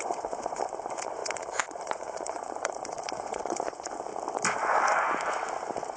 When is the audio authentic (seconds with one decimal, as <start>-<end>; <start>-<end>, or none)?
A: 4.1-6.0